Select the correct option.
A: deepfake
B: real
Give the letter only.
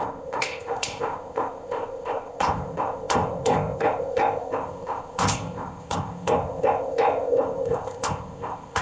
A